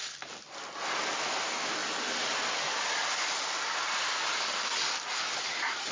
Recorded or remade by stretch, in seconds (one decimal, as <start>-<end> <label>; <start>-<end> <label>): 0.0-5.9 recorded